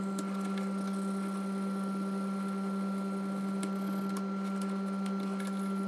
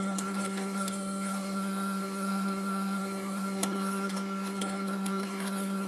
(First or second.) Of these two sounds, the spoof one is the second